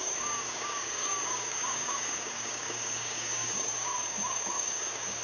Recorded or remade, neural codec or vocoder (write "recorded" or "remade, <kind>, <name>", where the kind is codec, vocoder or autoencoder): remade, codec, DAC